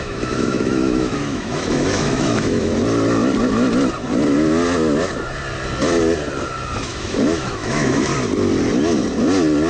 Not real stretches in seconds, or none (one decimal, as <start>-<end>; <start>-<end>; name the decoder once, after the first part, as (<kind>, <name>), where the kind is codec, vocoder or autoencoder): 0.0-2.7 (autoencoder, DAC-VAE); 6.9-8.1

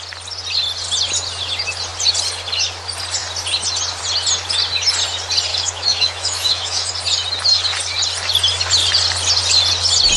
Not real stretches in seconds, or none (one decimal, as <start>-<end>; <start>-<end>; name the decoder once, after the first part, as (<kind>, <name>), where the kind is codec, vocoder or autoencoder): 5.5-6.9 (autoencoder, DAC-VAE)

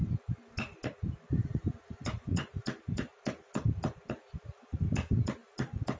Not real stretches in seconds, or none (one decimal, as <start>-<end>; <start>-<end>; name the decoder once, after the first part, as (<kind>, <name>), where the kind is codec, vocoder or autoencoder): 2.0-2.5 (vocoder, Vocos)

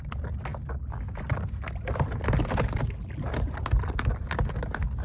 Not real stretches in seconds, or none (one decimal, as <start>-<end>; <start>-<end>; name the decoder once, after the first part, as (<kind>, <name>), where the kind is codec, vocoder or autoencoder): none

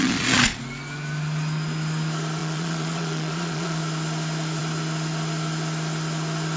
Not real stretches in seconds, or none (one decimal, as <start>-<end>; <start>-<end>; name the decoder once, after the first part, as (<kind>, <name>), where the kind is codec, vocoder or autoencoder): 0.0-0.6 (vocoder, Vocos); 2.4-3.8

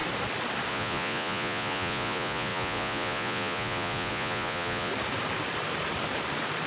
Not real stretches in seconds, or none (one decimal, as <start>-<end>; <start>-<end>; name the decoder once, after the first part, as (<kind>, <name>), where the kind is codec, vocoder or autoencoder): 0.7-4.9 (vocoder, Vocos)

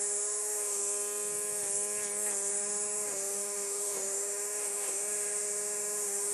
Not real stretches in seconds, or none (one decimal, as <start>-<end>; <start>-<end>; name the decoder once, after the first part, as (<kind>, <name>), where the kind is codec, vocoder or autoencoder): 0.0-0.8 (autoencoder, DAC-VAE); 2.5-6.3